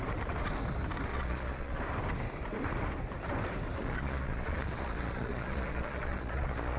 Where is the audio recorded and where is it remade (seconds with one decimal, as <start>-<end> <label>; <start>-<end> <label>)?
0.0-1.1 recorded; 1.1-1.8 remade; 1.8-3.8 recorded; 3.8-6.8 remade